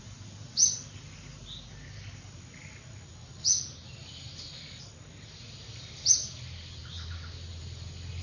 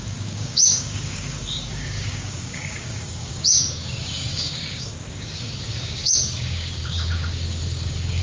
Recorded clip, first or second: first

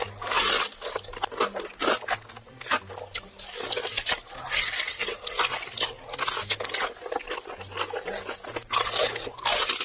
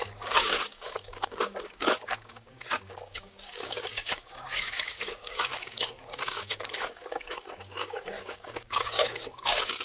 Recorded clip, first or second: first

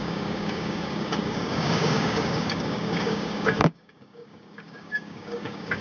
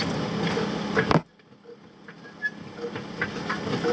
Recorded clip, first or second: second